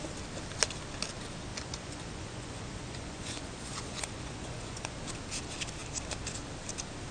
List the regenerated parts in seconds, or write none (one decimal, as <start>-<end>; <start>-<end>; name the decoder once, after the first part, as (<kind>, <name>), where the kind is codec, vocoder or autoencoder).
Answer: 1.5-5.0 (vocoder, Vocos)